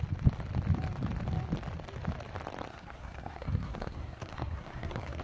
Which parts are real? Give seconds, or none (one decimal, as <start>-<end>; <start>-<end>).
0.0-2.7